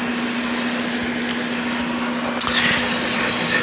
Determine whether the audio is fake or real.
real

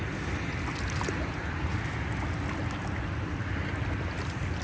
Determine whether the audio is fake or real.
real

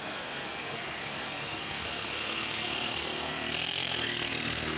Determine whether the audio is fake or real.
fake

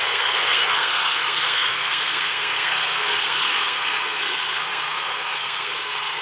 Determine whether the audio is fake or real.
fake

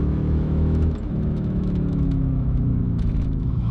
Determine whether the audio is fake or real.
fake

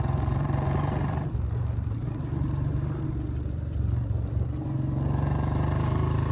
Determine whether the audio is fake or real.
fake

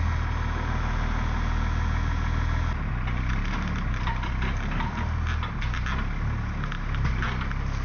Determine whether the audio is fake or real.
real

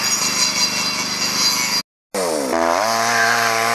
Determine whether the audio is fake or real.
real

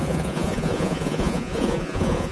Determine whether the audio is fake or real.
fake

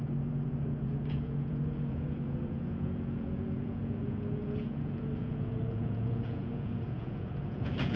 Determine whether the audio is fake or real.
fake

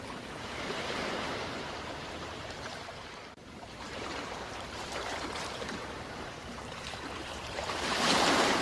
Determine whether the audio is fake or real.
fake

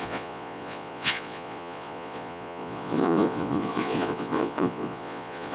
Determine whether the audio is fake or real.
fake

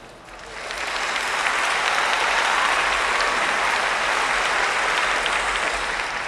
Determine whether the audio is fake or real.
real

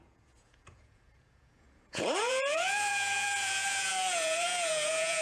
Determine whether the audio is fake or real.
fake